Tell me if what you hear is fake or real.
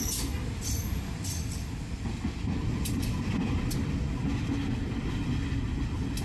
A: real